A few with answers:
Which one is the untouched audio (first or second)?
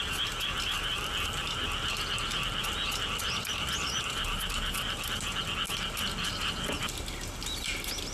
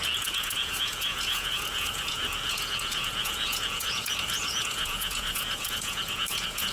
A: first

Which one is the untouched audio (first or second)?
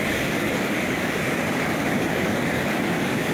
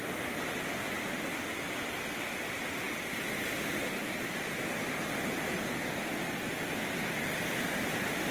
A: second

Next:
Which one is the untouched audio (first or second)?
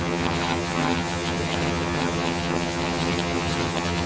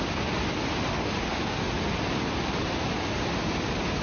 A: second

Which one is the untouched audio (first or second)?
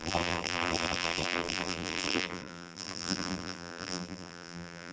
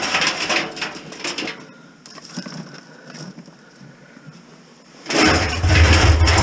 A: second